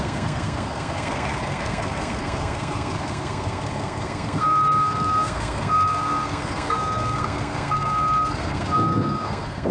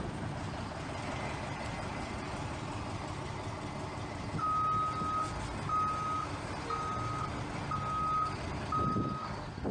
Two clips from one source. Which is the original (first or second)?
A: second